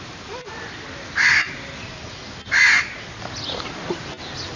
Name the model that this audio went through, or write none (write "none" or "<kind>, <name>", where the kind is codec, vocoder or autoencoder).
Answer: none